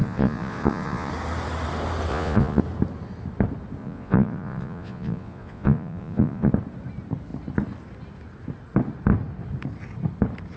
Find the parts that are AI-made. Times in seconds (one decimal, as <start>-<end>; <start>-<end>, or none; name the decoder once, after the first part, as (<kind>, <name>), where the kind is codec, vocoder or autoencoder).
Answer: 0.0-1.1 (vocoder, Vocos); 2.1-2.6; 3.8-6.5